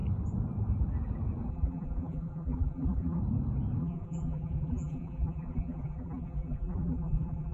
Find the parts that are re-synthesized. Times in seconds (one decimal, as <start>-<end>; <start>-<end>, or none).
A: 1.5-3.2; 3.8-7.5